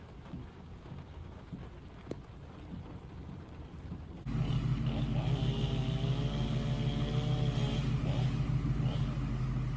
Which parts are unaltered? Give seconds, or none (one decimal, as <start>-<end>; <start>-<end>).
0.0-0.4; 1.5-9.8